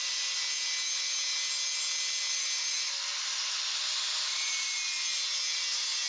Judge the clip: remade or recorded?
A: recorded